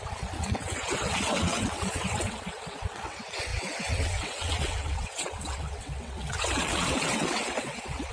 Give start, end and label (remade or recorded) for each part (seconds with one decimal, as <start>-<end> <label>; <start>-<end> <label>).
0.0-8.1 remade